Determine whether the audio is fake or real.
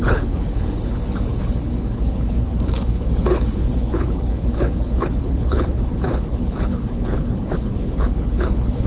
fake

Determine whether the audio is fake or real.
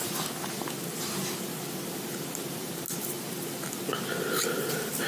real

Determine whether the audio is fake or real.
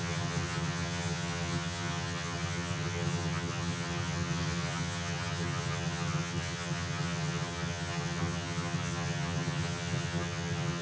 fake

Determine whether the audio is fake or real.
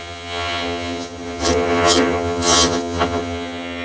fake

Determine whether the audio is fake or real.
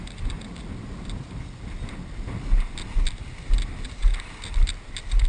real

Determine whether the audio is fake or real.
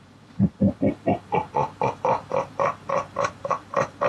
fake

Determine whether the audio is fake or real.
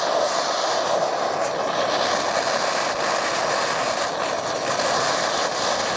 real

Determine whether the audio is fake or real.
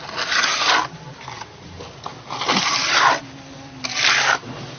real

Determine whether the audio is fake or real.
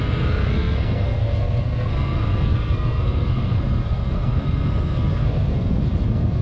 fake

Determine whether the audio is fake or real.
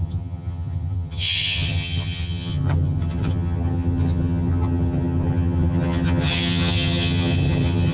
fake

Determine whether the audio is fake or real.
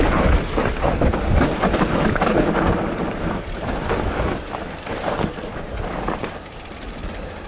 fake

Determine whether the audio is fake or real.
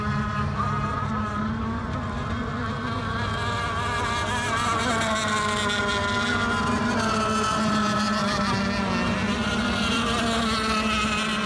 real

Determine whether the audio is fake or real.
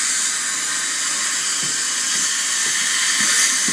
real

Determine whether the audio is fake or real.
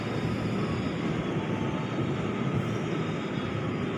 real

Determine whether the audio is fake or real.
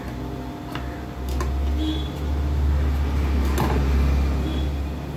real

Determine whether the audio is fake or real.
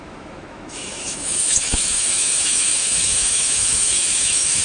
fake